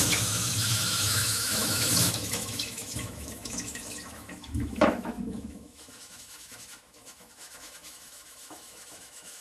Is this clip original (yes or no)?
no